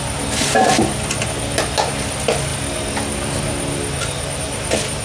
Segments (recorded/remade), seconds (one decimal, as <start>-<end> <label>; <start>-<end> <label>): 0.0-5.0 recorded